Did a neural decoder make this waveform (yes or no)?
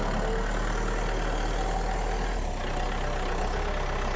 no